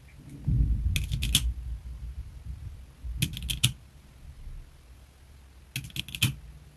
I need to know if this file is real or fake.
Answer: real